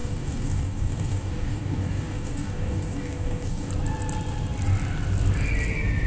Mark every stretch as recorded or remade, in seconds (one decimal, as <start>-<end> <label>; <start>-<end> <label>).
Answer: 0.0-3.7 remade; 3.7-6.1 recorded